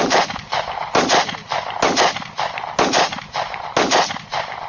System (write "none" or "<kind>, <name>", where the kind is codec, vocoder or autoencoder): none